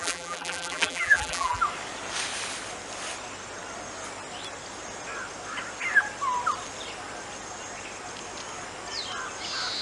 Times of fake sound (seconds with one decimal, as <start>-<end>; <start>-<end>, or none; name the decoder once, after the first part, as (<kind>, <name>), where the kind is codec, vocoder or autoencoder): 0.0-1.6 (vocoder, BigVGAN v2)